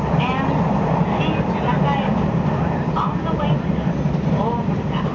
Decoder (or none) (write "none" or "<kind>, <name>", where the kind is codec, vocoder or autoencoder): none